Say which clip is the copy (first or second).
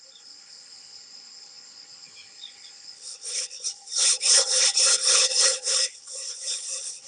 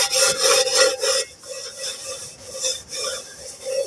first